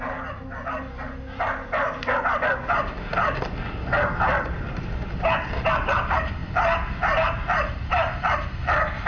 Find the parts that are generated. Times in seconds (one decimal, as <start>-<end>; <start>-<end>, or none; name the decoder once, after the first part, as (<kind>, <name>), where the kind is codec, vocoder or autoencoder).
none